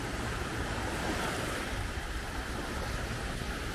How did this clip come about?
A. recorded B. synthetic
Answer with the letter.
A